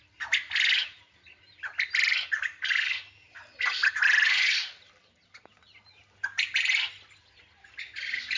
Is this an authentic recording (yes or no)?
yes